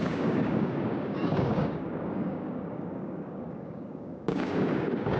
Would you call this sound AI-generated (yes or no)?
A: yes